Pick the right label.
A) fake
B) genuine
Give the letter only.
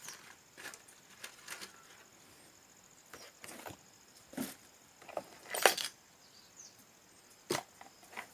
B